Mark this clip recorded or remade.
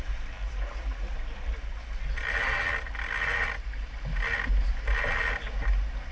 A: recorded